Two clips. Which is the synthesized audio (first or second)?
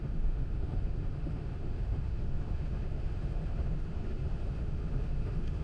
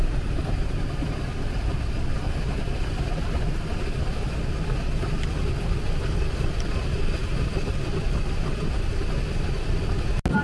first